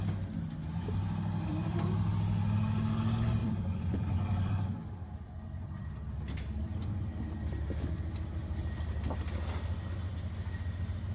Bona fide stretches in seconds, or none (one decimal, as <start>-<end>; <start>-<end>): 0.0-1.5; 2.1-3.4; 4.5-8.4; 9.1-11.1